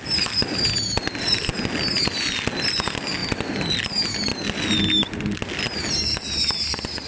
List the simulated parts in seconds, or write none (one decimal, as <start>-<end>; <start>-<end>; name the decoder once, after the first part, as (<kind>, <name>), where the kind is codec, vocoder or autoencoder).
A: 3.2-3.7 (vocoder, BigVGAN v2)